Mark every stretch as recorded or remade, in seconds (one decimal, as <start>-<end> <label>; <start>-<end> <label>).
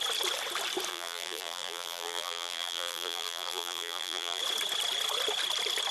0.0-0.9 recorded; 0.9-4.4 remade; 4.4-5.9 recorded